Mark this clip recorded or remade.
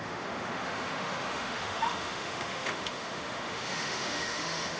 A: remade